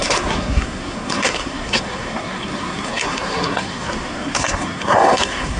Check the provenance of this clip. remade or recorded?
remade